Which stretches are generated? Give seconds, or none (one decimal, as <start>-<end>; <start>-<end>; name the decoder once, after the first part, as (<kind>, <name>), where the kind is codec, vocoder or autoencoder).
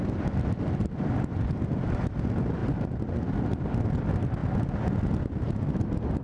none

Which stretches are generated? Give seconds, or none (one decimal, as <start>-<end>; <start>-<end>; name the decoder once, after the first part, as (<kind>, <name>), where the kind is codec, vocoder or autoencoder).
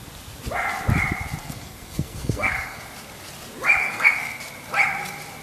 1.4-2.8 (codec, SNAC); 3.8-4.4